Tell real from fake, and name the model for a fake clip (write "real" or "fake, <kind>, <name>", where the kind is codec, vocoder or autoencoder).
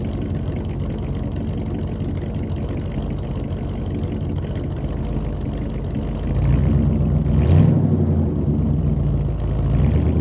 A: real